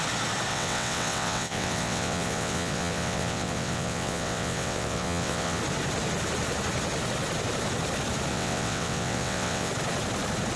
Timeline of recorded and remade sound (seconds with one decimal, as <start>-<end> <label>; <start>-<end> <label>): 0.0-0.5 recorded; 0.5-5.6 remade; 5.6-8.3 recorded; 8.3-9.7 remade; 9.7-10.6 recorded